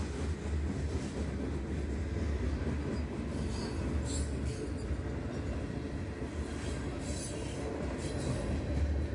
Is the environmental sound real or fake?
real